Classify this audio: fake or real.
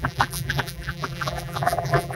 fake